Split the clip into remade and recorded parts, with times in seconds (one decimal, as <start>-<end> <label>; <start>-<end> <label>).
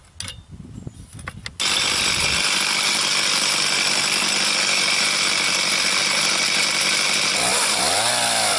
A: 0.0-8.6 recorded